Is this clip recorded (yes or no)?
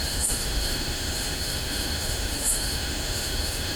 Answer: no